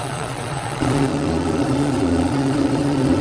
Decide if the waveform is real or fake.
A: fake